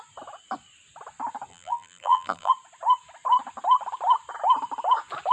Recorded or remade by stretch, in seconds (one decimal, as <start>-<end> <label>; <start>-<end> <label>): 0.0-1.5 recorded; 1.5-2.5 remade; 2.5-5.3 recorded